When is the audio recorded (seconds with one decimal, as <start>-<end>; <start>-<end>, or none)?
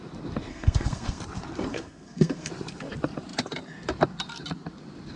0.0-0.5; 1.2-1.7; 2.5-5.2